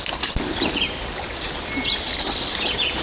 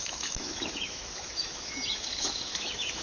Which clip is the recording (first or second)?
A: first